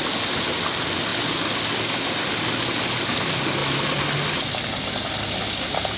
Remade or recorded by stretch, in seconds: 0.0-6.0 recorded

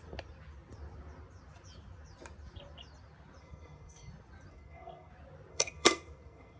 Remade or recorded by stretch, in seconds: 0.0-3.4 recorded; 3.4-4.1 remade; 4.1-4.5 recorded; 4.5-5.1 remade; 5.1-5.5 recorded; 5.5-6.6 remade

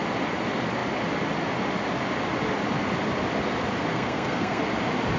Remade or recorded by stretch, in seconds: 0.0-3.9 recorded; 3.9-4.6 remade; 4.6-5.2 recorded

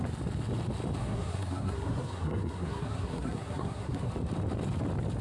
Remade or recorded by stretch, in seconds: 0.0-1.0 recorded; 1.0-4.1 remade; 4.1-5.2 recorded

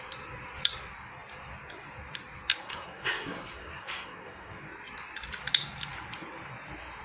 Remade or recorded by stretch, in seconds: 0.0-2.6 recorded; 2.6-4.6 remade; 4.6-7.0 recorded

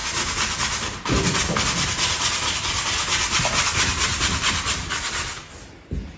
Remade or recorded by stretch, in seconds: 0.0-6.2 recorded

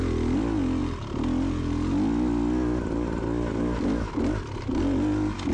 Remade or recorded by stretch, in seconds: 0.0-5.5 recorded

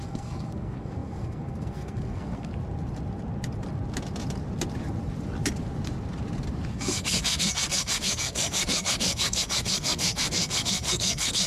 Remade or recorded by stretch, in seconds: 0.0-2.5 remade; 2.5-6.7 recorded; 6.7-11.5 remade